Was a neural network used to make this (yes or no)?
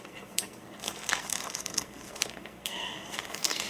yes